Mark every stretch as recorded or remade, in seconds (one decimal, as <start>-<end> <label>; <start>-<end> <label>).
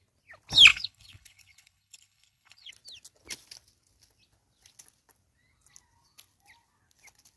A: 0.0-0.7 recorded; 0.7-2.7 remade; 2.7-7.4 recorded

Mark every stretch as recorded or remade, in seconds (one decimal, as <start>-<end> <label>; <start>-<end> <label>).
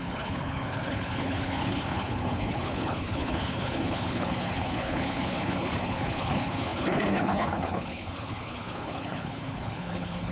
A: 0.0-10.3 remade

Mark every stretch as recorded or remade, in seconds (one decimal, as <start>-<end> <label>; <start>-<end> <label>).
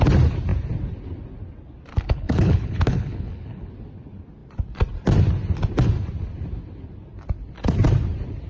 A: 0.0-1.9 recorded; 1.9-3.7 remade; 3.7-8.5 recorded